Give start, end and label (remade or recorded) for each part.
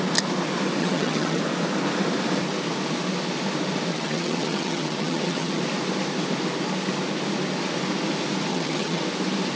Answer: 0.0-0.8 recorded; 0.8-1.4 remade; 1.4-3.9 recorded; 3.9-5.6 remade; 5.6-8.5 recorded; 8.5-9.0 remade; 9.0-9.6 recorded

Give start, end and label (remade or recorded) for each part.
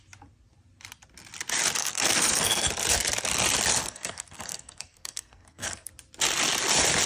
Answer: 0.0-1.8 recorded; 1.8-2.7 remade; 2.7-3.8 recorded; 3.8-5.9 remade; 5.9-7.1 recorded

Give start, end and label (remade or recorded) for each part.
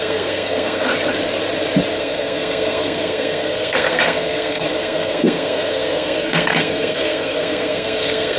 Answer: 0.0-0.9 remade; 0.9-1.9 recorded; 1.9-8.4 remade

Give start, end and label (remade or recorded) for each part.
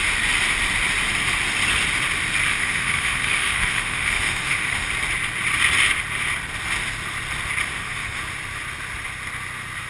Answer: 0.0-2.5 recorded; 2.5-4.9 remade; 4.9-7.7 recorded; 7.7-8.2 remade; 8.2-9.9 recorded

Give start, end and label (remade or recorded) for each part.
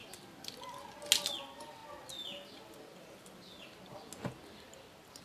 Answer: 0.0-5.2 recorded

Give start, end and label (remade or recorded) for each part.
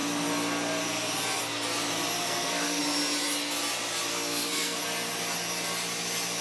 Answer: 0.0-2.2 recorded; 2.2-2.8 remade; 2.8-4.1 recorded; 4.1-4.8 remade; 4.8-6.4 recorded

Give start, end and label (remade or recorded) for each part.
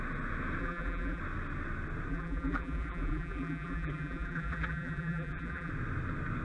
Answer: 0.0-0.6 recorded; 0.6-1.2 remade; 1.2-2.1 recorded; 2.1-5.7 remade; 5.7-6.4 recorded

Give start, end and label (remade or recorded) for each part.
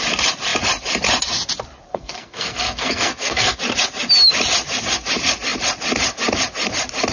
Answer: 0.0-1.9 recorded; 1.9-3.6 remade; 3.6-7.1 recorded